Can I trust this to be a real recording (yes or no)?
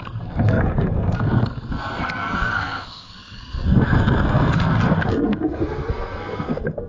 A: no